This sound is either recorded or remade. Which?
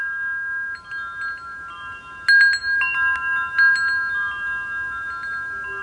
recorded